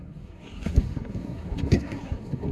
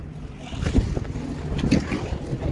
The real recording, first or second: second